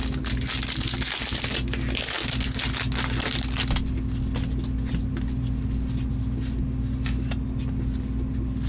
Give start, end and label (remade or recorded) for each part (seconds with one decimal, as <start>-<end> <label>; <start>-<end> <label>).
0.0-8.7 recorded